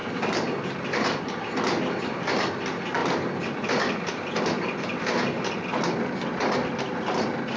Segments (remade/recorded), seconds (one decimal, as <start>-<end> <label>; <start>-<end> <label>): 0.0-7.6 recorded